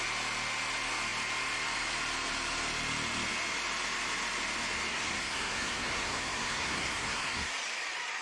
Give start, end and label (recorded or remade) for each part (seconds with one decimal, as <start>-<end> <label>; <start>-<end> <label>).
0.0-4.9 recorded; 4.9-7.5 remade; 7.5-8.2 recorded